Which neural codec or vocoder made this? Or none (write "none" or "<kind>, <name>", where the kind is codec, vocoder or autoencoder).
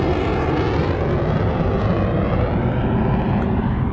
none